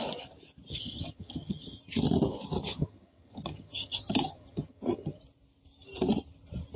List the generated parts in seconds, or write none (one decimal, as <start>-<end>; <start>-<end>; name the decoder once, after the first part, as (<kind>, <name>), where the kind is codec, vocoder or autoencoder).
0.7-1.8 (vocoder, HiFi-GAN); 2.7-5.2